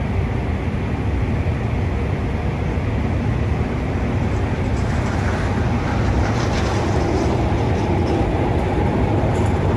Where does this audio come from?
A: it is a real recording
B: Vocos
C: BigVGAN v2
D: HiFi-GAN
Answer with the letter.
A